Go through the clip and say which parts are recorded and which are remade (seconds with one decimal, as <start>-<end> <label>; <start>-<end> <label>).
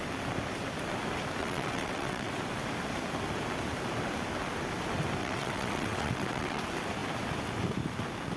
0.0-1.4 recorded; 1.4-2.3 remade; 2.3-5.2 recorded; 5.2-6.6 remade; 6.6-8.4 recorded